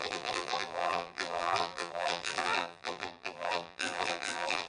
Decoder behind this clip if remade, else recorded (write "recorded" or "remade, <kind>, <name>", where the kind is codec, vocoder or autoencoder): remade, vocoder, BigVGAN v2